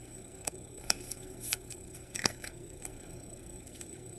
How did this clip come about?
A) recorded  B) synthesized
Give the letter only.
B